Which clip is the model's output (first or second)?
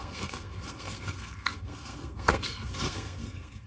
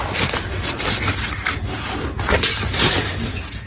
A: first